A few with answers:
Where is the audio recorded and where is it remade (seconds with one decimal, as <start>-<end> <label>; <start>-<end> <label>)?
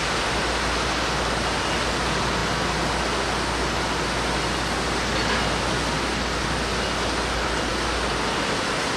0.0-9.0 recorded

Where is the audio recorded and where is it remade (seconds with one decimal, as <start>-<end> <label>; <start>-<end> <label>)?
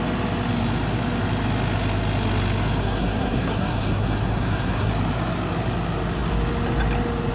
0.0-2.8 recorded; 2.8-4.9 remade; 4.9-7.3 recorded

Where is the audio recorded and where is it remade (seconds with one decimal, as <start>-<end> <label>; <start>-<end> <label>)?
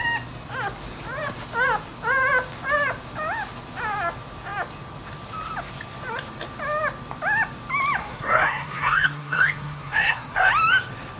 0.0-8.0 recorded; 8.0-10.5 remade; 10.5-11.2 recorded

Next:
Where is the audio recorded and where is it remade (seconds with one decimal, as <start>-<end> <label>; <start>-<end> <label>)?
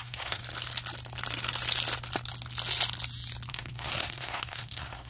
0.0-0.4 remade; 0.4-3.5 recorded; 3.5-5.1 remade